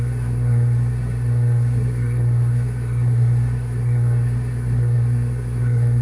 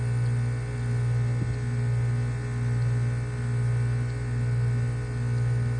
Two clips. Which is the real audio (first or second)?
second